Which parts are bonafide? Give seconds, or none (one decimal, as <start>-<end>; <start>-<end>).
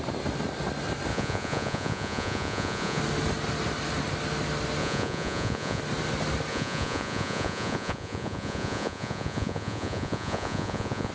0.0-1.1; 3.0-4.8; 5.8-6.5